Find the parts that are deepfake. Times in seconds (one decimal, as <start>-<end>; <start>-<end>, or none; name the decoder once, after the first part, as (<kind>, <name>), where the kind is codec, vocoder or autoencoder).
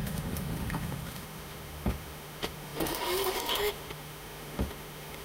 0.0-5.2 (autoencoder, DAC-VAE)